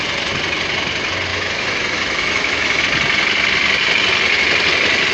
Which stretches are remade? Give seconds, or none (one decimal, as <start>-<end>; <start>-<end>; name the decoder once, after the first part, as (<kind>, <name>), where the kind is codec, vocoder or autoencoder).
1.3-2.8 (autoencoder, DAC-VAE)